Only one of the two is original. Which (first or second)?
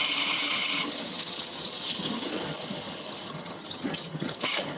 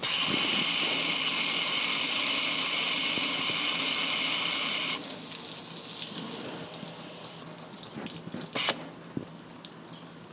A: second